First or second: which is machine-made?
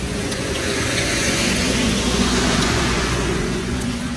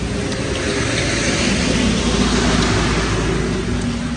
first